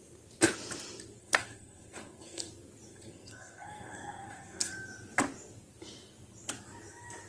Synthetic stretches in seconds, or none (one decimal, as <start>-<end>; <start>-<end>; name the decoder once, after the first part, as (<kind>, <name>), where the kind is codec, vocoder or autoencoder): 1.2-2.5 (codec, SNAC); 2.9-4.7